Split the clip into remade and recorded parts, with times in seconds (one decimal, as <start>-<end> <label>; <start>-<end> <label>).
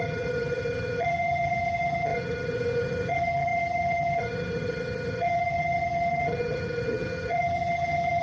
0.0-8.2 remade